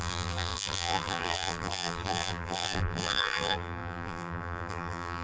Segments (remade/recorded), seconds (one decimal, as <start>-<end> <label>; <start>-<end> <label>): 0.0-5.2 remade